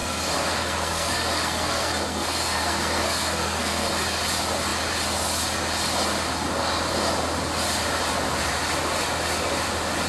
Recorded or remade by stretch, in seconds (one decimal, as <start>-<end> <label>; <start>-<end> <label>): 0.0-3.9 remade; 3.9-10.1 recorded